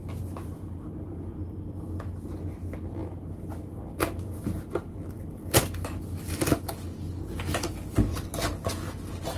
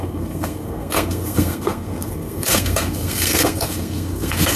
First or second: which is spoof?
second